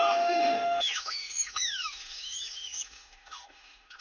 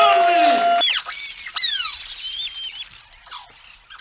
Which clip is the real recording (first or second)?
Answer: second